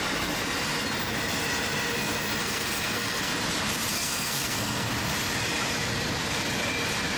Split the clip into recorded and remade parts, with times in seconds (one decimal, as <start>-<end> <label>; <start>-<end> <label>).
0.0-2.4 recorded; 2.4-3.3 remade; 3.3-3.9 recorded; 3.9-4.9 remade; 4.9-7.2 recorded